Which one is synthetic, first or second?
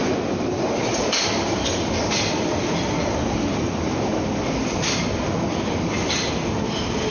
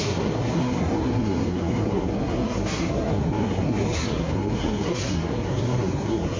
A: second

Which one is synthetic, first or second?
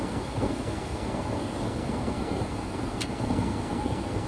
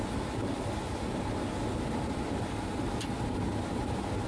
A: first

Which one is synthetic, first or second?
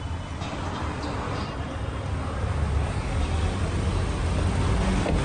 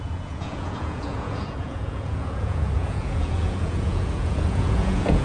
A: second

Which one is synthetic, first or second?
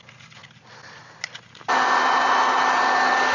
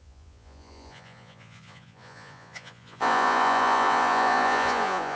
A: second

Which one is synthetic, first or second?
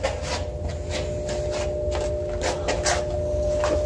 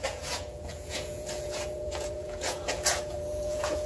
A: second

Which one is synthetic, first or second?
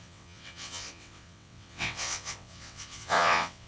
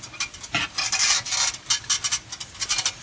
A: first